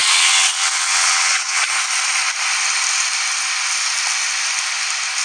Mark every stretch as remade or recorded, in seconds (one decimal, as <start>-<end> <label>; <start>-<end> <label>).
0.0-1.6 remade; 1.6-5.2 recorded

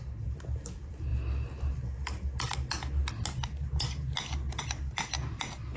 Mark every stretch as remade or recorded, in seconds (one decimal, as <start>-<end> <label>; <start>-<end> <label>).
0.0-1.1 remade; 1.1-4.6 recorded; 4.6-5.8 remade

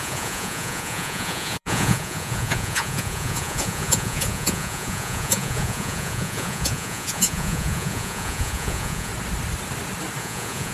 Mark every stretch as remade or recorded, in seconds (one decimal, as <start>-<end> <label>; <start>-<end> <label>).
0.0-9.1 remade; 9.1-10.2 recorded; 10.2-10.7 remade

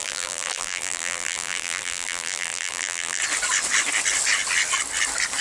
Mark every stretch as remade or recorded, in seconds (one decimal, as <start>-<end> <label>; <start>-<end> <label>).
0.0-3.2 remade; 3.2-5.4 recorded

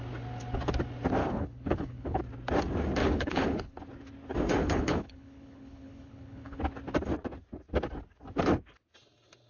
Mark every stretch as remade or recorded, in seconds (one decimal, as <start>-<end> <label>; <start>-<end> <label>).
0.0-1.2 recorded; 1.2-2.2 remade; 2.2-3.0 recorded; 3.0-3.8 remade; 3.8-4.6 recorded; 4.6-6.6 remade; 6.6-9.5 recorded

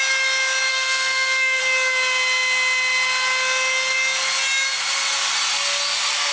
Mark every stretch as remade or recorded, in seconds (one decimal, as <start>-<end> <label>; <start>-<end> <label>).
0.0-0.7 recorded; 0.7-1.6 remade; 1.6-6.3 recorded

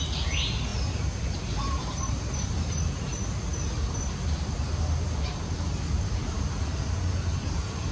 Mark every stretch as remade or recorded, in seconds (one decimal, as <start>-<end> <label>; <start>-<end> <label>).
0.0-6.2 recorded; 6.2-6.7 remade; 6.7-7.9 recorded